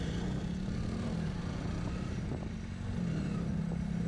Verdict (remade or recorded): recorded